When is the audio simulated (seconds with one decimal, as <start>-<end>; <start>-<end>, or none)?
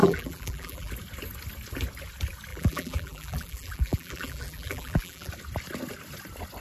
0.0-0.9; 2.5-5.3